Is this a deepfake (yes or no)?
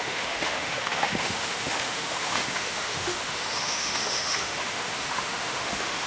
yes